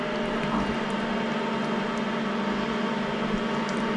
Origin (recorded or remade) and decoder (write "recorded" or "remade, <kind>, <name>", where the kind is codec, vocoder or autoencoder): recorded